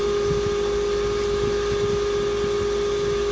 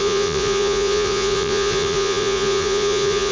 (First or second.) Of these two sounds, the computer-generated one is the second